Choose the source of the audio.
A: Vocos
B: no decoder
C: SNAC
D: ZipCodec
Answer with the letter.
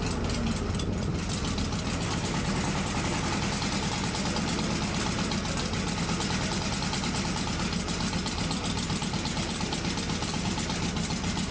B